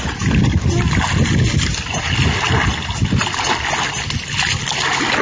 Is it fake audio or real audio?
real